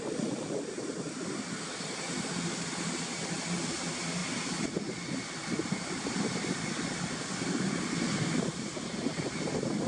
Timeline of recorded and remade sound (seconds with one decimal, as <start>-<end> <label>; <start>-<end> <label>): 0.0-9.9 recorded